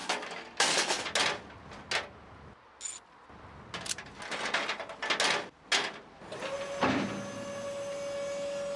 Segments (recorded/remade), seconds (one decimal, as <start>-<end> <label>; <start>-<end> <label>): 0.0-1.0 remade; 1.0-8.8 recorded

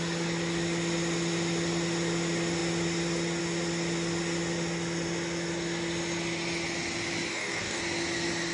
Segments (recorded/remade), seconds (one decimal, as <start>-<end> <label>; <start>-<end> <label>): 0.0-7.3 recorded; 7.3-7.8 remade; 7.8-8.5 recorded

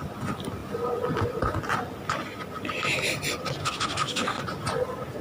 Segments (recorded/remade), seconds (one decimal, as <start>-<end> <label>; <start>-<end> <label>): 0.0-3.6 recorded; 3.6-4.4 remade; 4.4-5.2 recorded

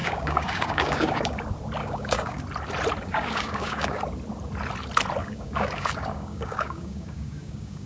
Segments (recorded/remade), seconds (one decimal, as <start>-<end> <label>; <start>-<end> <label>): 0.0-1.4 remade; 1.4-1.8 recorded; 1.8-2.4 remade; 2.4-3.0 recorded; 3.0-4.0 remade; 4.0-5.2 recorded; 5.2-7.9 remade

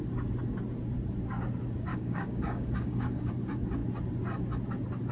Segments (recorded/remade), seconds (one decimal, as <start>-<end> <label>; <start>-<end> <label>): 0.0-1.9 recorded; 1.9-3.3 remade; 3.3-5.1 recorded

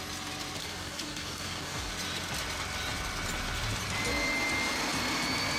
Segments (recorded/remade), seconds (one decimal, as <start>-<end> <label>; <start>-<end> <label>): 0.0-0.6 recorded; 0.6-1.9 remade; 1.9-5.6 recorded